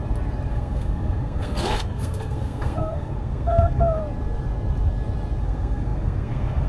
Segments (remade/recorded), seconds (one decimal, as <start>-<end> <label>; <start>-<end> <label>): 0.0-0.5 recorded; 0.5-4.0 remade; 4.0-5.4 recorded; 5.4-6.7 remade